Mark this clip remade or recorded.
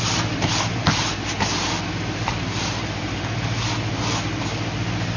recorded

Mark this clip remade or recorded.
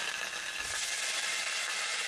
recorded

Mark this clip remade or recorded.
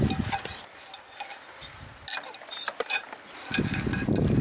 recorded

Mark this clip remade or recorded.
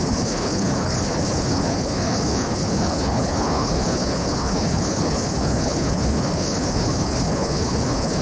remade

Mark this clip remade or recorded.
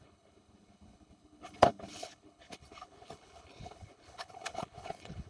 remade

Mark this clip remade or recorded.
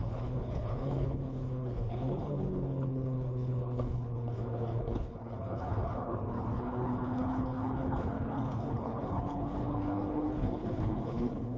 remade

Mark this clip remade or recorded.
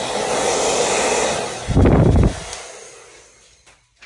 recorded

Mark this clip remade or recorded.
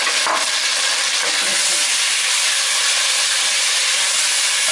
recorded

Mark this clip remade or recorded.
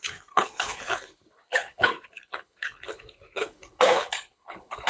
remade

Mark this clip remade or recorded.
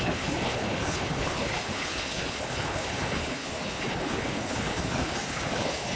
remade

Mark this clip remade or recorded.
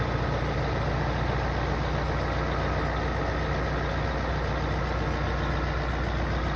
recorded